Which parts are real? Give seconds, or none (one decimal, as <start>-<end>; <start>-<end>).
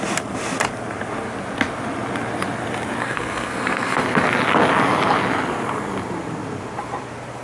0.0-3.0; 4.0-7.4